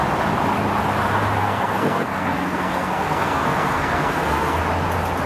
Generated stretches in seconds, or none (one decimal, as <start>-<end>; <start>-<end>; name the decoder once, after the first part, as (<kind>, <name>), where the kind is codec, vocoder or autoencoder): 1.4-4.6 (codec, SNAC)